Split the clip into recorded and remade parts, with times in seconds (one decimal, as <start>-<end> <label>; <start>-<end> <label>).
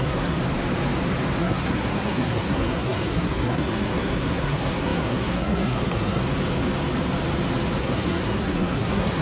0.0-0.4 remade; 0.4-1.4 recorded; 1.4-6.2 remade; 6.2-7.8 recorded; 7.8-9.2 remade